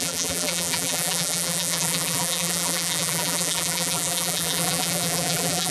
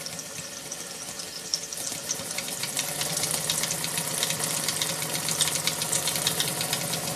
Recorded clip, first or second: second